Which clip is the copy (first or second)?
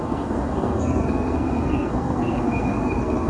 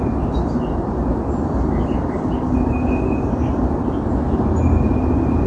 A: first